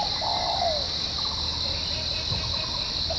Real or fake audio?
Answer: real